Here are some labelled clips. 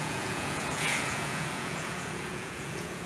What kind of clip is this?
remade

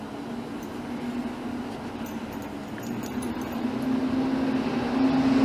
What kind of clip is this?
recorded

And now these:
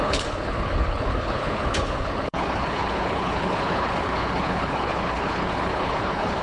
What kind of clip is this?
remade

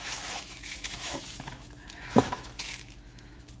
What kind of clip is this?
remade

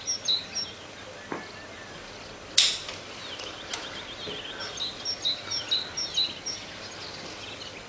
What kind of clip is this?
recorded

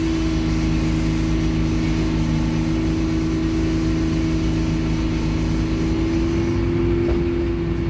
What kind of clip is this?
recorded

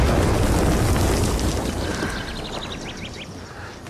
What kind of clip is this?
recorded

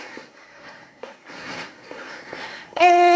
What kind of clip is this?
remade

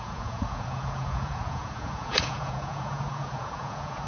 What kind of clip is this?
remade